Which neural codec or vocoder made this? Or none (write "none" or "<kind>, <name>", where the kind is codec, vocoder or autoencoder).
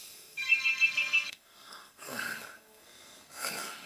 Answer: codec, SNAC